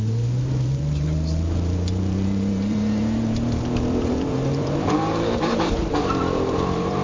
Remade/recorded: remade